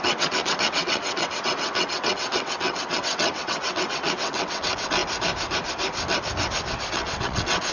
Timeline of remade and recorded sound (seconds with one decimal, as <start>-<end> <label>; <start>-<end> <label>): 0.0-5.0 remade; 5.0-6.9 recorded; 6.9-7.7 remade